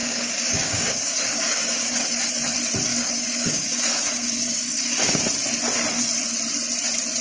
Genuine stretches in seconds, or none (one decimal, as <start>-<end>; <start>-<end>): 2.3-2.9; 5.2-7.2